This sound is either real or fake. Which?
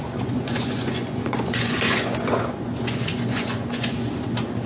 fake